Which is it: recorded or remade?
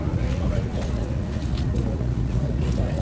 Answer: remade